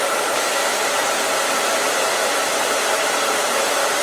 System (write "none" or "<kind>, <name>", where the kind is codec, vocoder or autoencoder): vocoder, BigVGAN v2